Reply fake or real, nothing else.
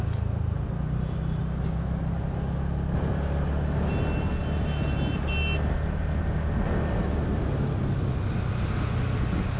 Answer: real